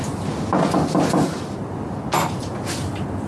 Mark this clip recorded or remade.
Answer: recorded